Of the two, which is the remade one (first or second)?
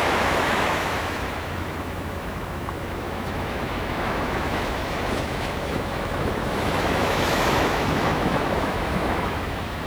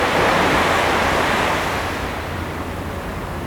first